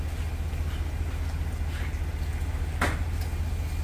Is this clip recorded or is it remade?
recorded